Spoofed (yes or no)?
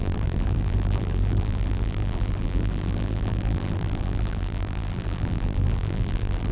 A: yes